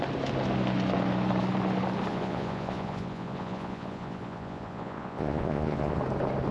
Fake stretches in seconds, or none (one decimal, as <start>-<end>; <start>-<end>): 2.1-6.0